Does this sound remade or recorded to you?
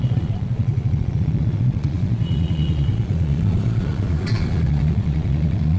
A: remade